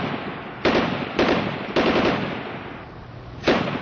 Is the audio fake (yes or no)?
no